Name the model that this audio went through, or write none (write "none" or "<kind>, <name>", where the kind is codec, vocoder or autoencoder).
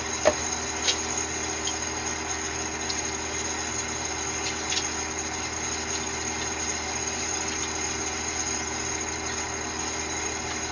none